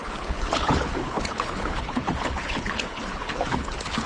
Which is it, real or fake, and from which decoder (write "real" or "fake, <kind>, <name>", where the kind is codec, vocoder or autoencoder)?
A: fake, codec, HILCodec